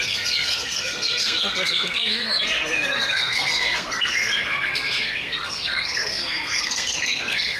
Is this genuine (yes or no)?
no